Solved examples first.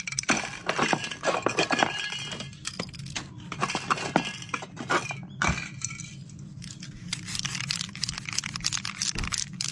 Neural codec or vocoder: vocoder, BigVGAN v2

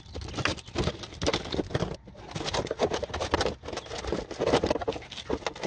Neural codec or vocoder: none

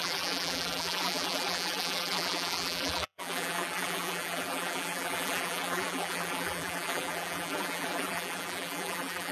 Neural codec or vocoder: vocoder, BigVGAN v2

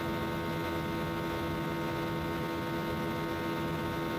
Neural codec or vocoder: none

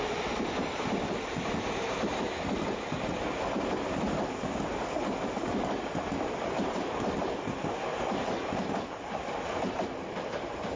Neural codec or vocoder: vocoder, BigVGAN v2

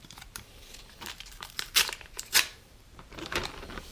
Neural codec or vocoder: vocoder, BigVGAN v2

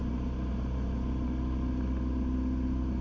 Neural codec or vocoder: none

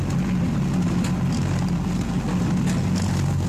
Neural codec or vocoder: none